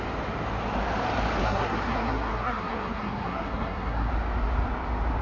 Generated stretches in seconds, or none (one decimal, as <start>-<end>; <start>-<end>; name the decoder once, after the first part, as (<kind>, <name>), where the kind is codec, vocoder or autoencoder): 1.4-4.1 (codec, SNAC)